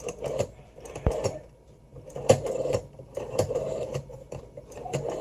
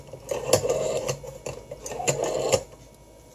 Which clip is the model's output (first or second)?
first